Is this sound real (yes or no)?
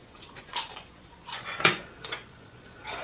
no